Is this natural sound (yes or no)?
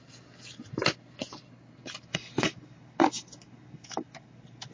yes